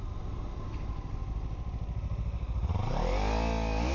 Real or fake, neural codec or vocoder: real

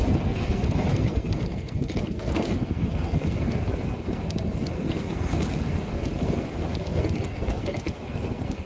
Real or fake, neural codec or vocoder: fake, codec, SNAC